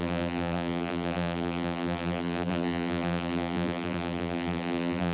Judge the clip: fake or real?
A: fake